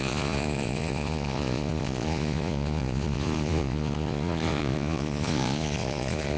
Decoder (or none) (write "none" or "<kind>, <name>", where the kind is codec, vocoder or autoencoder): vocoder, Vocos